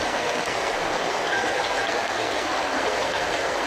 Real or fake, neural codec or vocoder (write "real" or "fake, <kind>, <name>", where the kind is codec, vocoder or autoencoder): fake, codec, SNAC